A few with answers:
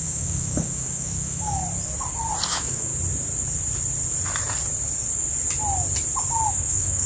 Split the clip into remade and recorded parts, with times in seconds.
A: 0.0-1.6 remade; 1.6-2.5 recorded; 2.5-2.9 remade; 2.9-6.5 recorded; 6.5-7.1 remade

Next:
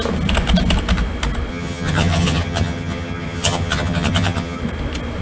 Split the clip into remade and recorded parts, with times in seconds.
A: 0.0-1.5 recorded; 1.5-4.6 remade; 4.6-5.2 recorded

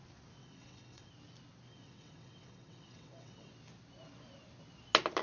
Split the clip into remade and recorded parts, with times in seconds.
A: 0.0-0.4 recorded; 0.4-1.1 remade; 1.1-1.7 recorded; 1.7-3.5 remade; 3.5-5.2 recorded

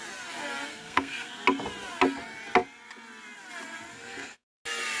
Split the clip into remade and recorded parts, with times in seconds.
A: 0.0-0.7 recorded; 0.7-1.3 remade; 1.3-3.9 recorded; 3.9-4.6 remade; 4.6-5.0 recorded

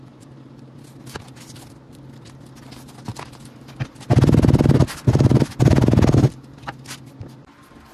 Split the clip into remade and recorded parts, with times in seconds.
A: 0.0-7.9 recorded